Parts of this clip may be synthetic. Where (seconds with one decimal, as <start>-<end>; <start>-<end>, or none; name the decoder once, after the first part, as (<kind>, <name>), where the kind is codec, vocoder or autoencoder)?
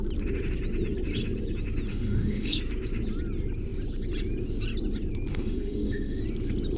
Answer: 1.9-2.6 (autoencoder, DAC-VAE); 5.3-6.2